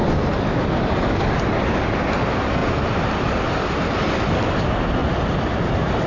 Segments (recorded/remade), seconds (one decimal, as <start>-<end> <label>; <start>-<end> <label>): 0.0-6.1 recorded